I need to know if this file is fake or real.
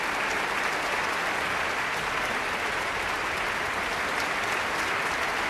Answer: real